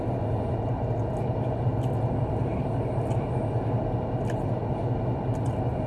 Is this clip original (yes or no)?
yes